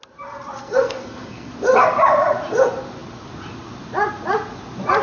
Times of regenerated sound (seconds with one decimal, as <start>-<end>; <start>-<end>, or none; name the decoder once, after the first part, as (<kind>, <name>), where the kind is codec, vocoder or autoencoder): 0.6-1.5 (codec, SNAC)